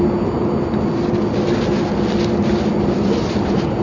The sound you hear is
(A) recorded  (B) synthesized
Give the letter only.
A